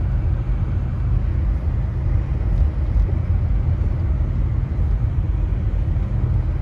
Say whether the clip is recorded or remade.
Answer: recorded